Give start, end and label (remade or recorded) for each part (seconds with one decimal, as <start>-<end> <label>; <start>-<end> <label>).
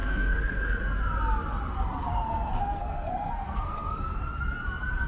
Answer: 0.0-0.8 remade; 0.8-2.1 recorded; 2.1-4.0 remade; 4.0-5.1 recorded